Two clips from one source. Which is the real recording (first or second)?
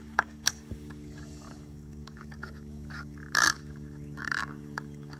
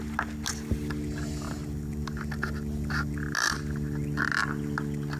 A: second